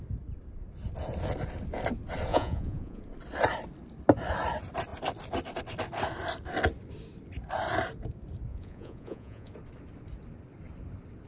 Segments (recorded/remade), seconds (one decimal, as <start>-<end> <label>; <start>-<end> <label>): 0.0-2.3 recorded; 2.3-3.0 remade; 3.0-8.5 recorded; 8.5-9.5 remade; 9.5-11.3 recorded